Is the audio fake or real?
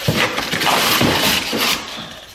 fake